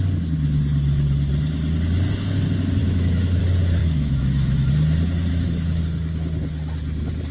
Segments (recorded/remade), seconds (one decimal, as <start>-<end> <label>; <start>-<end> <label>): 0.0-2.8 recorded; 2.8-3.4 remade; 3.4-3.8 recorded; 3.8-4.7 remade; 4.7-5.3 recorded; 5.3-5.8 remade; 5.8-7.3 recorded